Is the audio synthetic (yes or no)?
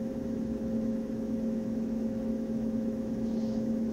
yes